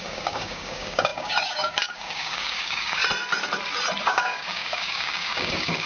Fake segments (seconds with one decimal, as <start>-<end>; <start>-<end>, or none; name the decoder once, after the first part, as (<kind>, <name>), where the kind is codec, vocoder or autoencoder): 0.0-3.0 (codec, DAC); 4.0-5.9